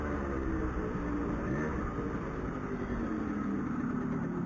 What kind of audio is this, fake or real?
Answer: real